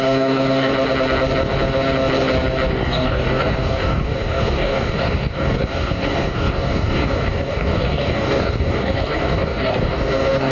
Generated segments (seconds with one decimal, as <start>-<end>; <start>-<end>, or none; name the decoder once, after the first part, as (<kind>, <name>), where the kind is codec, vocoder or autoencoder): 0.0-0.7 (codec, DAC); 2.7-10.5